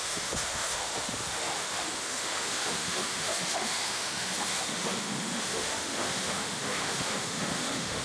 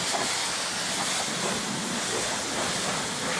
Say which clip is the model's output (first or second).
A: first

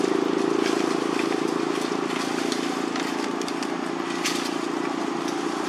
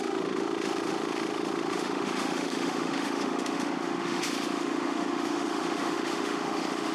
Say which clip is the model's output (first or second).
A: second